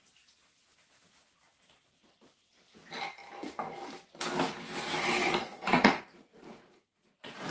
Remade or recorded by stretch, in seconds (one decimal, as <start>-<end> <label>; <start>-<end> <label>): 0.0-5.2 recorded; 5.2-7.5 remade